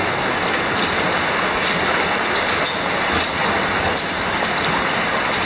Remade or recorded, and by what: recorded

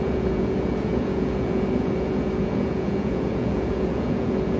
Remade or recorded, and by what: remade, vocoder, Vocos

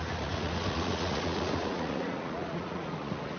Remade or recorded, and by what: remade, vocoder, Vocos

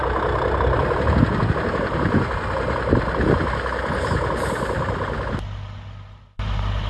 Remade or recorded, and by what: recorded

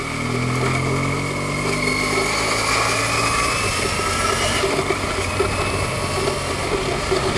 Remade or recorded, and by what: recorded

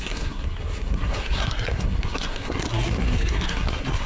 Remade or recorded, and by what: remade, codec, SNAC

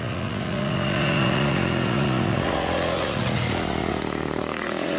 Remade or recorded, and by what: remade, vocoder, Vocos